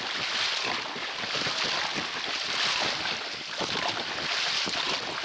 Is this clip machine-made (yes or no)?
no